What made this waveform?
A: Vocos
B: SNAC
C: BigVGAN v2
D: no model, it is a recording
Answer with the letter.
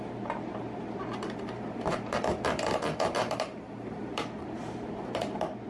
C